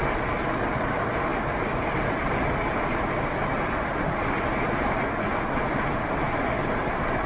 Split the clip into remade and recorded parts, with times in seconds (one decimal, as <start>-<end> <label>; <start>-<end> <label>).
0.0-7.3 recorded